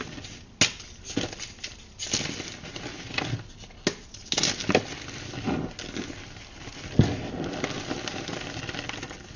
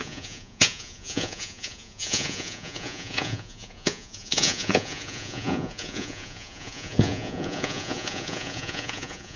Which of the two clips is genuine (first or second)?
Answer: first